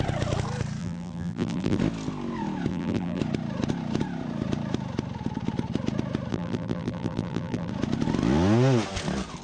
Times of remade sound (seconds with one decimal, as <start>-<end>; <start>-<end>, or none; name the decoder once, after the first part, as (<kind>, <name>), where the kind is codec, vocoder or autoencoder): 0.8-1.8 (vocoder, BigVGAN v2); 2.7-3.2; 6.3-7.7

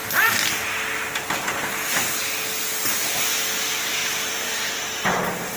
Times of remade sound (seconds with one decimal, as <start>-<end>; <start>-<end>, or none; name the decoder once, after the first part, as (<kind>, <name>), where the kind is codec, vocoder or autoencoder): 4.0-4.7 (vocoder, BigVGAN v2)

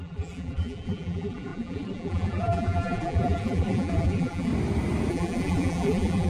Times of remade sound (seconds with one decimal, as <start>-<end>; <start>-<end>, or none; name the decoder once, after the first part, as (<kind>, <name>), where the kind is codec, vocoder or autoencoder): 0.0-4.5 (vocoder, BigVGAN v2); 5.1-6.3

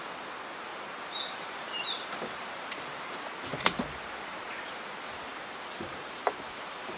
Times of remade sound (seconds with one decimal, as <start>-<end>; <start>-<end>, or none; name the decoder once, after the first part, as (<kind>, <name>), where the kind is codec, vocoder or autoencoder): 0.7-4.1 (vocoder, BigVGAN v2); 5.3-7.0

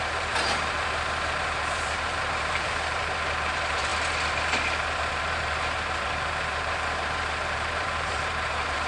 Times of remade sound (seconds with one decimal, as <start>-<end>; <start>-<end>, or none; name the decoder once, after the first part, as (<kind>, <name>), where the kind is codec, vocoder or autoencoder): 0.0-3.9 (vocoder, BigVGAN v2); 5.1-8.9